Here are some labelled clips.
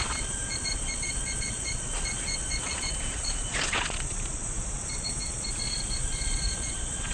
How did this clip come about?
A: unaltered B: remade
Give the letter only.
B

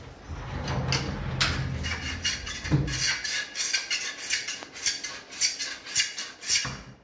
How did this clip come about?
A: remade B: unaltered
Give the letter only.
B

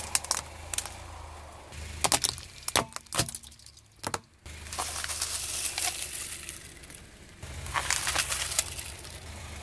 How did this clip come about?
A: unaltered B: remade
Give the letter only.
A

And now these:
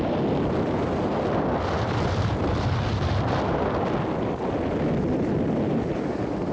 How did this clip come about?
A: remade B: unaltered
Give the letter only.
B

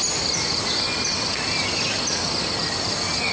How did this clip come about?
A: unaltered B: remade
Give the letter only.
A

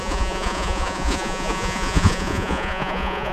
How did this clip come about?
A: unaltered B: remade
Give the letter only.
B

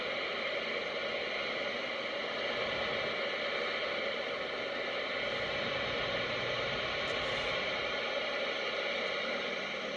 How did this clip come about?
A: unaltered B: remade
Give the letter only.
A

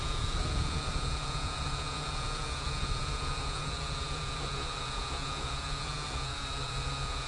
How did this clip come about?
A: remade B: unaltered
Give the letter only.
A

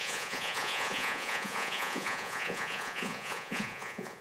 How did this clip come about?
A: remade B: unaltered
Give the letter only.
A